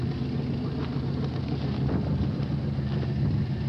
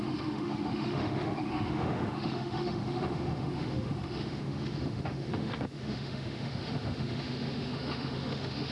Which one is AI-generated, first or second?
second